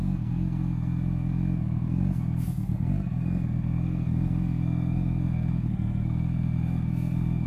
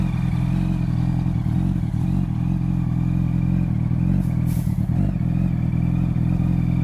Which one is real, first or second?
second